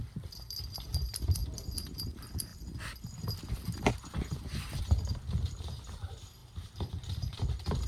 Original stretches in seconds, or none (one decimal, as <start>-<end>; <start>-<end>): 1.4-2.0; 2.5-4.8